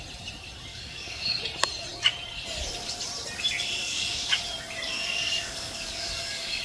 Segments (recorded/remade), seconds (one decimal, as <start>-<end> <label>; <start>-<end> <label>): 0.0-0.7 recorded; 0.7-1.4 remade; 1.4-3.8 recorded; 3.8-4.4 remade; 4.4-4.9 recorded; 4.9-6.6 remade